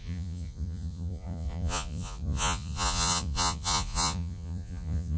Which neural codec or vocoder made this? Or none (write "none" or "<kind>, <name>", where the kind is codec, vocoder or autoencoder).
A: vocoder, Vocos